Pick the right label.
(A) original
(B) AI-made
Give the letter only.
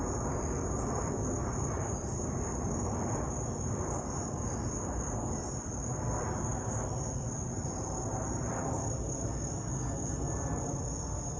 B